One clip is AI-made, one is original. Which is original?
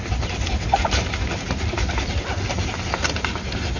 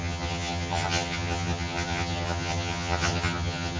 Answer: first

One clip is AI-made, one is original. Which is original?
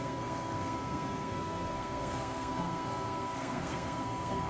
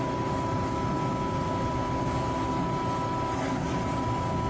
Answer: second